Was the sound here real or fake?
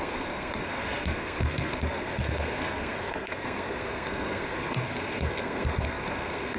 fake